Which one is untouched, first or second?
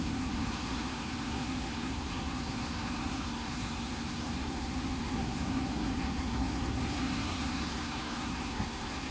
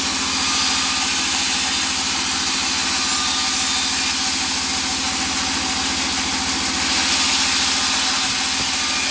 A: second